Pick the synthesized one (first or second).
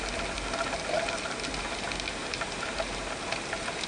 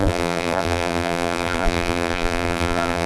second